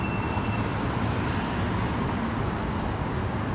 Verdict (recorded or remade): recorded